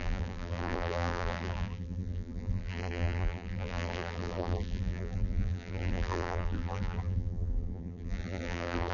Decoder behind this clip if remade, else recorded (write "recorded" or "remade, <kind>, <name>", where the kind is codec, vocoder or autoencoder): remade, vocoder, BigVGAN v2